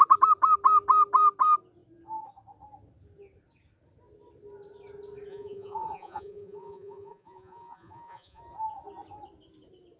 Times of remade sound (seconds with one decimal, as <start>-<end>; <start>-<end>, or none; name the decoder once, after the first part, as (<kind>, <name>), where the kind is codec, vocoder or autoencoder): 5.3-8.4 (vocoder, Vocos)